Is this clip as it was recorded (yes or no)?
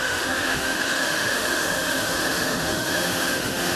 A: no